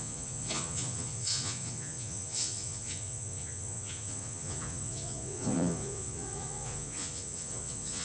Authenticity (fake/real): fake